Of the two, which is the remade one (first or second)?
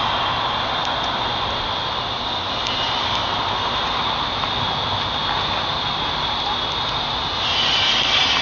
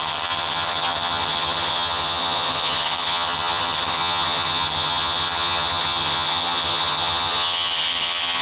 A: second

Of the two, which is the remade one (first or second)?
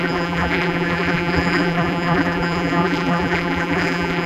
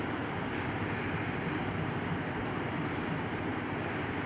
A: first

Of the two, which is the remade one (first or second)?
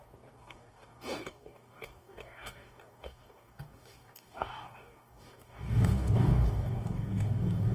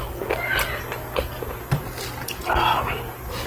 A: first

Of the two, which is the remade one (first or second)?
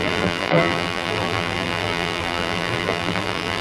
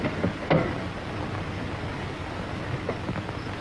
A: first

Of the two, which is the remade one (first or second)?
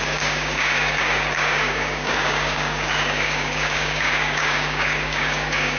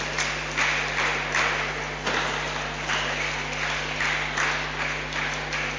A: first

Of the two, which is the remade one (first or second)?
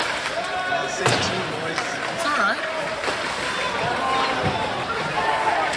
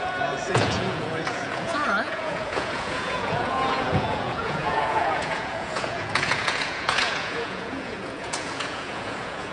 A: second